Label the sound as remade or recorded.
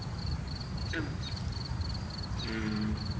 recorded